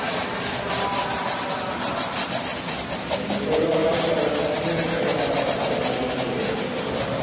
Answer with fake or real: real